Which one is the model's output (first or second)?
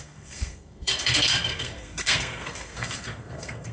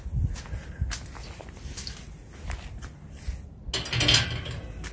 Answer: first